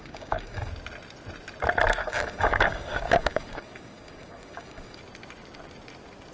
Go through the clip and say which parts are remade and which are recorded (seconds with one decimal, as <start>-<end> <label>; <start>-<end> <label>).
0.0-0.7 remade; 0.7-2.0 recorded; 2.0-5.0 remade; 5.0-6.3 recorded